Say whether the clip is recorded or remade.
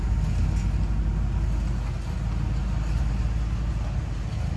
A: recorded